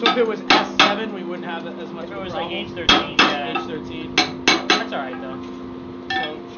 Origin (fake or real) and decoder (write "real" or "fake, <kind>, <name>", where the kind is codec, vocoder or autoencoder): real